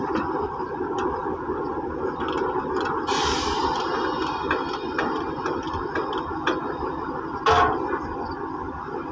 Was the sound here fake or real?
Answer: real